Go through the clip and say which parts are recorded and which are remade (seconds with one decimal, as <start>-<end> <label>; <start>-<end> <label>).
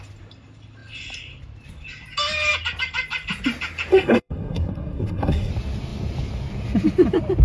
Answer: 0.0-3.9 recorded; 3.9-5.5 remade; 5.5-7.4 recorded